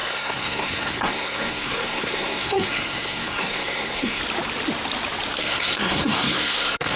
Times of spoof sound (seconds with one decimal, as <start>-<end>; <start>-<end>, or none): 0.0-4.2; 5.4-7.0